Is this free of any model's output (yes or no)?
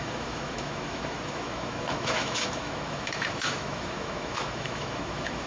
no